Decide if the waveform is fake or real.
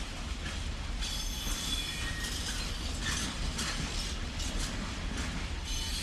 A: real